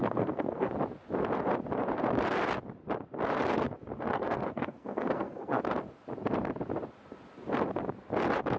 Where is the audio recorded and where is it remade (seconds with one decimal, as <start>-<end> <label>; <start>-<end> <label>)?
0.0-0.7 remade; 0.7-4.1 recorded; 4.1-5.6 remade; 5.6-8.6 recorded